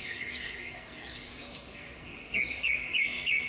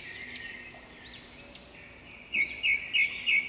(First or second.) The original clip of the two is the second